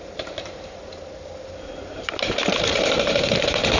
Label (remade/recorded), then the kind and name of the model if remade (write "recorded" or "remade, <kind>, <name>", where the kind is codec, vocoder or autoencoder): remade, vocoder, BigVGAN v2